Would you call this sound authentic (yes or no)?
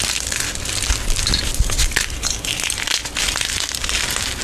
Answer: yes